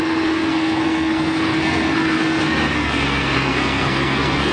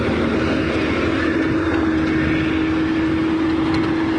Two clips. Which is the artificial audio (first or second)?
first